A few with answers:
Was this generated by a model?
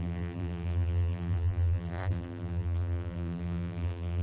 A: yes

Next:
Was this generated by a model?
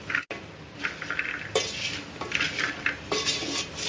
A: no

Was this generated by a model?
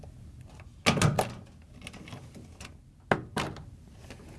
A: no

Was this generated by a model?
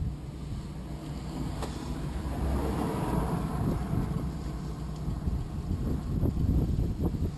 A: no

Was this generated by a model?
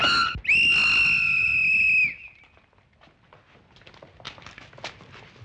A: no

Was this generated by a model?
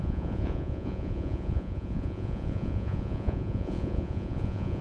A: yes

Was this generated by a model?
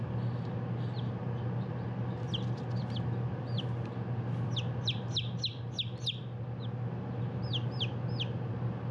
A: no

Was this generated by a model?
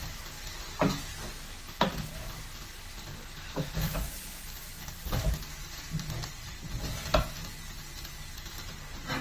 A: no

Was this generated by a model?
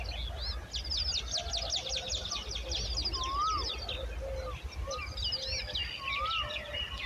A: no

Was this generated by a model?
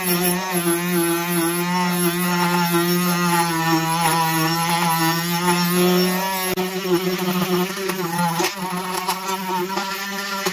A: no